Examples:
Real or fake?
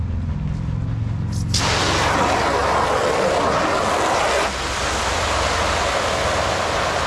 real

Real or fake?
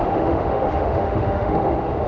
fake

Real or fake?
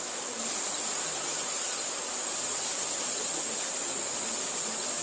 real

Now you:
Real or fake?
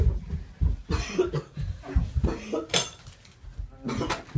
real